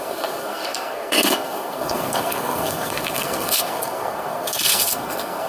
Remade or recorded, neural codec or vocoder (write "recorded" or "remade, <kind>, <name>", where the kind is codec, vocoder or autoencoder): remade, codec, SNAC